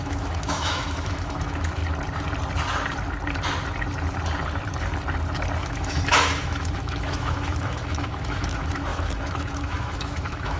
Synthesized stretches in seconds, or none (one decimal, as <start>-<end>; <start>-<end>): 0.0-1.8; 5.6-10.6

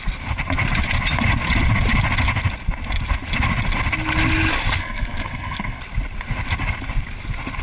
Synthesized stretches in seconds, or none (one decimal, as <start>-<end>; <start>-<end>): 4.8-5.8

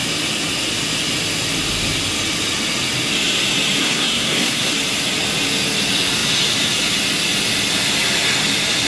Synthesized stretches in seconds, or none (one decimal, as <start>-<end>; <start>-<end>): 3.8-4.7

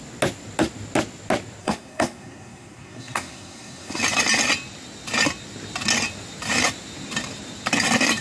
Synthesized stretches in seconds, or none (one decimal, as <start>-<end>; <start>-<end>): 1.6-4.0